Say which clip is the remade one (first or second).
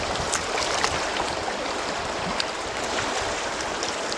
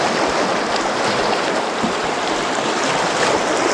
first